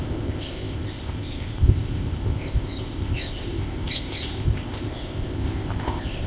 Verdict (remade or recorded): remade